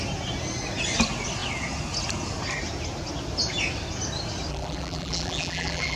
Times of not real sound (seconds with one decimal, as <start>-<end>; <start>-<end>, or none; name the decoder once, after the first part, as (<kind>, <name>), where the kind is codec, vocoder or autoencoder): 4.5-6.0 (vocoder, BigVGAN v2)